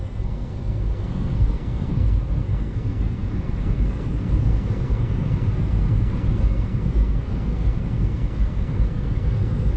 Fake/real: fake